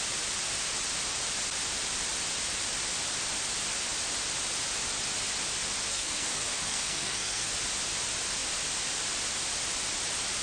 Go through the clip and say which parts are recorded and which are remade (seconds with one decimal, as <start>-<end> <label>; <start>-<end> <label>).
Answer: 0.0-5.9 recorded; 5.9-7.5 remade; 7.5-10.4 recorded